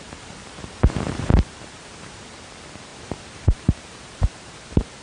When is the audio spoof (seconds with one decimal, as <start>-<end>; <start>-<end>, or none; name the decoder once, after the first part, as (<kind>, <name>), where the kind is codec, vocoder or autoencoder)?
0.0-5.0 (vocoder, BigVGAN v2)